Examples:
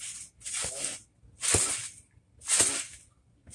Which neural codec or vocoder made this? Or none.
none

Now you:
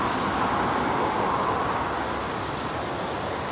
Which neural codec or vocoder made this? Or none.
none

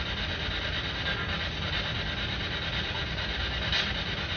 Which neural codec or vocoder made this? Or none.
none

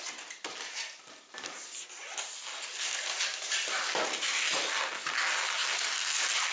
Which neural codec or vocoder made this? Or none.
none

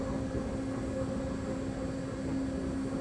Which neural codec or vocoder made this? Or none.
none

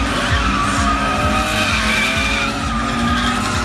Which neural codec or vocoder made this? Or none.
none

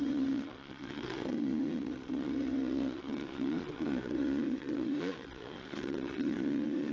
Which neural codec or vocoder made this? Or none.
vocoder, WaveNeXt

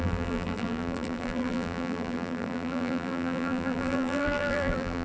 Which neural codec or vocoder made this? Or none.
vocoder, BigVGAN v2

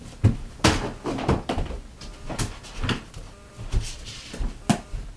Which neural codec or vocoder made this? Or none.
none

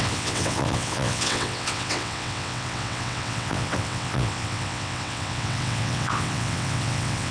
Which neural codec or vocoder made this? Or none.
vocoder, WaveNeXt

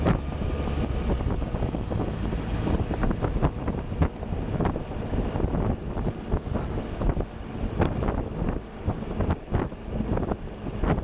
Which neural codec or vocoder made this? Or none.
none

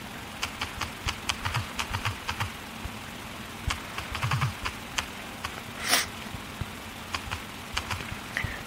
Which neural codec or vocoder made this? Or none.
none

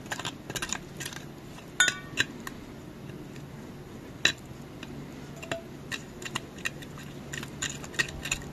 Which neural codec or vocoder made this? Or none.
none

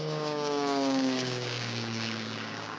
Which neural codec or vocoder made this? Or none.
codec, DAC